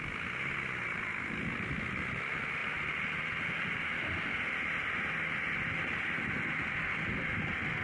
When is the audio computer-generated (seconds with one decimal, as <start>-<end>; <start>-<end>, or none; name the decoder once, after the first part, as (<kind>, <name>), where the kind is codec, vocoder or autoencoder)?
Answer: none